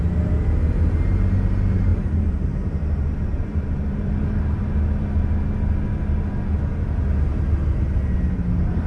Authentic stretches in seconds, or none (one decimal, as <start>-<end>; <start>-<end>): 0.0-1.9; 4.1-8.9